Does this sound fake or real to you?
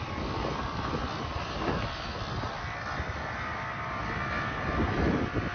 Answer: real